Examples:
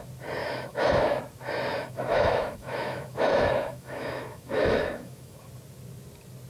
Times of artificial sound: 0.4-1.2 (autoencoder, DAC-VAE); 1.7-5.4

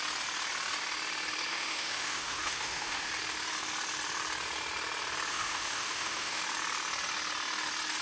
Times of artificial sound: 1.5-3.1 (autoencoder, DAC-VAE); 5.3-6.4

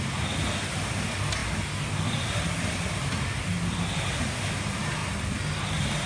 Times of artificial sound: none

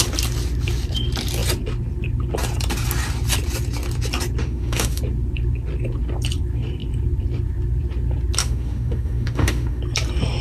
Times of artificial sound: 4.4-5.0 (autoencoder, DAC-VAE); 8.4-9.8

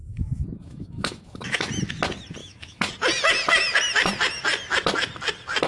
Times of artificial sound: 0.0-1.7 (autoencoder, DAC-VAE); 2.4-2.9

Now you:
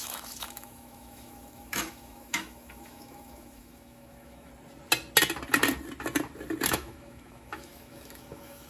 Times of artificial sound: 0.0-4.5 (autoencoder, DAC-VAE); 6.7-8.7